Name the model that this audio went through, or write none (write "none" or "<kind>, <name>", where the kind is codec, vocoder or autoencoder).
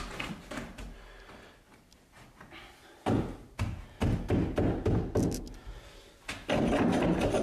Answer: none